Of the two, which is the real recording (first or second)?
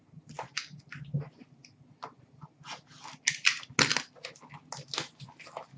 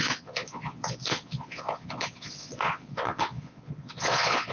first